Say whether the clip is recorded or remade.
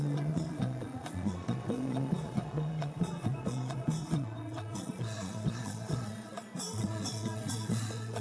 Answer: remade